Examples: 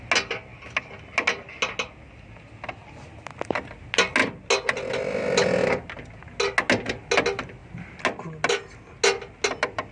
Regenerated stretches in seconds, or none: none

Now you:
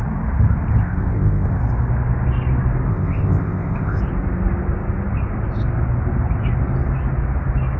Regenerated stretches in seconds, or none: 0.8-1.6 (codec, ZipCodec); 2.9-4.0

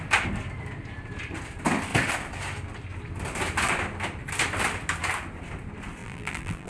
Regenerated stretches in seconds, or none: 6.0-6.7 (vocoder, BigVGAN v2)

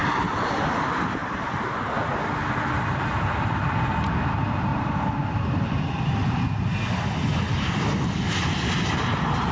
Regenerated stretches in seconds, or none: 4.7-5.8 (vocoder, BigVGAN v2)

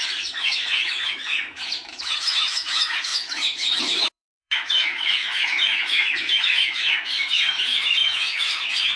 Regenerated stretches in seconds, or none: 0.0-9.0 (autoencoder, DAC-VAE)

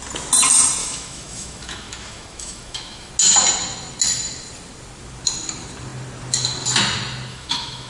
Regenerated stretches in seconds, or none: 0.8-3.1 (autoencoder, DAC-VAE); 7.3-7.9

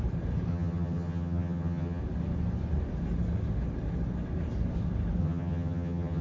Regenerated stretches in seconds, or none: 0.5-2.0 (vocoder, HiFi-GAN); 5.2-6.2